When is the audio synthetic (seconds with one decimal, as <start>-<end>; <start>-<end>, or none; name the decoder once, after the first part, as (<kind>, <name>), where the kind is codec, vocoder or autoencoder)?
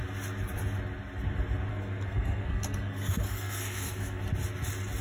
1.7-4.2 (codec, SNAC)